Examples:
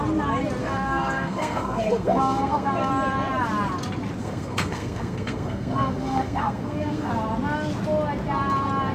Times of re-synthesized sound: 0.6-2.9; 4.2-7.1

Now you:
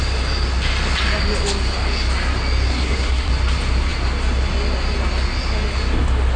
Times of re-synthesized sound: 2.7-3.3